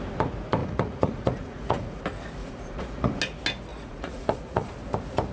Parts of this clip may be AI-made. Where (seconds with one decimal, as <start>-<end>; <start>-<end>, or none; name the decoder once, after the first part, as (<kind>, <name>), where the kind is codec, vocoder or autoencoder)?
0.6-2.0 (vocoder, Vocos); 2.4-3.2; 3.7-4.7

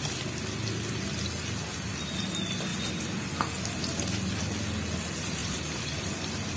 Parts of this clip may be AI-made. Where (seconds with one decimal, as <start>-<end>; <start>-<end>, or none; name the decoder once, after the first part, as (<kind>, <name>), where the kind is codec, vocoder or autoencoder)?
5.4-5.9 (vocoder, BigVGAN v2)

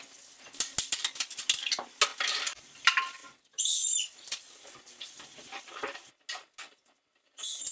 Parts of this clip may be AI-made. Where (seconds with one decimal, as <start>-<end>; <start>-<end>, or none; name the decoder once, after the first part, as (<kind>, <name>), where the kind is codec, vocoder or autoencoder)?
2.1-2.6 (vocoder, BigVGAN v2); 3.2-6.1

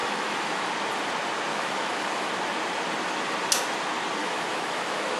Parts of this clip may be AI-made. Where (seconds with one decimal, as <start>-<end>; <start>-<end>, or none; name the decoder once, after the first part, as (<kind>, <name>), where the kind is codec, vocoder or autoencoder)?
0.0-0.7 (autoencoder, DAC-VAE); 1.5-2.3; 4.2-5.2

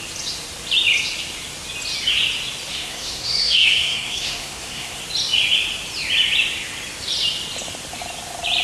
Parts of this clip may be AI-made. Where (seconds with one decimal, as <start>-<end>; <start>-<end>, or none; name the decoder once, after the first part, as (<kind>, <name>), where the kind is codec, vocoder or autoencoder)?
2.7-5.0 (codec, SNAC)

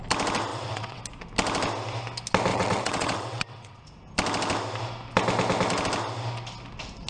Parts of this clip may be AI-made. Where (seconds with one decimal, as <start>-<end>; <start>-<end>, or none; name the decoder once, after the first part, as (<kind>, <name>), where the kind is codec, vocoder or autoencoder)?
0.5-1.0 (vocoder, WaveNeXt); 2.5-3.8

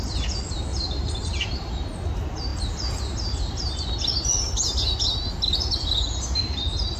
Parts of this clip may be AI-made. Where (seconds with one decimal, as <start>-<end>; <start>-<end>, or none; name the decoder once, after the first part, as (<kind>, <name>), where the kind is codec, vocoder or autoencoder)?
0.7-1.3 (vocoder, BigVGAN v2)